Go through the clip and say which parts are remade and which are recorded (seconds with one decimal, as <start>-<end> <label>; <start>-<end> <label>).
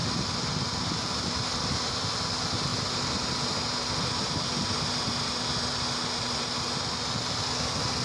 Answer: 0.0-8.0 recorded